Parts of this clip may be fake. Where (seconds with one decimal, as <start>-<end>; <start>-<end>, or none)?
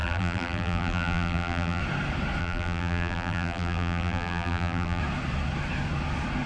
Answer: 0.0-1.8; 2.4-5.0